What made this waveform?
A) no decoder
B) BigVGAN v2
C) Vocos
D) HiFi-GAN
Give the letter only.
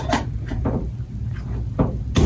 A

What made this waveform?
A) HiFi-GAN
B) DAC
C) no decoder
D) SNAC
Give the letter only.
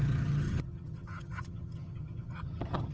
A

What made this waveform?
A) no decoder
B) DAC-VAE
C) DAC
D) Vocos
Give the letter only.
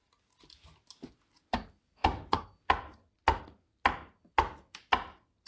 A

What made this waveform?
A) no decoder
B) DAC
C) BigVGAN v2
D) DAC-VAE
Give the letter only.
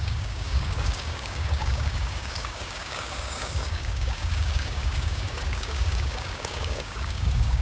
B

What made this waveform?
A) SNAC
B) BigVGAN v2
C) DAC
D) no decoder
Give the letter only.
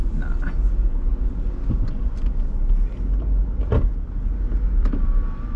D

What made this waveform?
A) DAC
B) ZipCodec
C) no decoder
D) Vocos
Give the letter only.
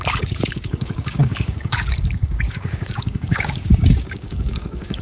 A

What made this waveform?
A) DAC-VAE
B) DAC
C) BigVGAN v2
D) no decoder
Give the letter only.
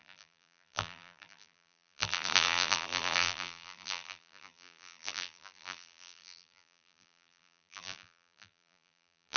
C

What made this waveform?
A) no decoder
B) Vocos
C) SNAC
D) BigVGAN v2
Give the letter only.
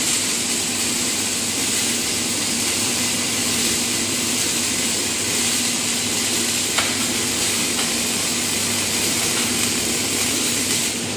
D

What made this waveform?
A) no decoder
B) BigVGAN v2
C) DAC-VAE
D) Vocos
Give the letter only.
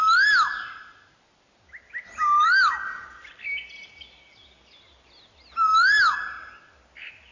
A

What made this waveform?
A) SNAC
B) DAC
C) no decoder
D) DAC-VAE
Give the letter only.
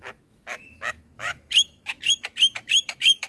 D